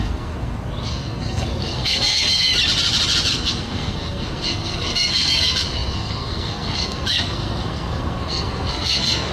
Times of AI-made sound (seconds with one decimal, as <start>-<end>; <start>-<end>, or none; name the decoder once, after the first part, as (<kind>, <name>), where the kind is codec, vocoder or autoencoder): 0.0-2.5 (codec, SNAC); 3.3-9.3